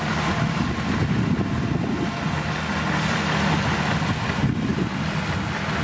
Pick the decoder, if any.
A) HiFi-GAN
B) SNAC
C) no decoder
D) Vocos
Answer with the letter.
C